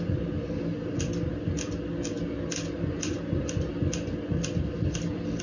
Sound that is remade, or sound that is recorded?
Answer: recorded